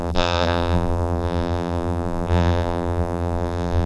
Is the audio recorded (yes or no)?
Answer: no